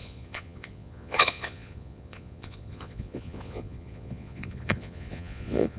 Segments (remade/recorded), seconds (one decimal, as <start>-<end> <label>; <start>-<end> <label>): 0.0-5.8 remade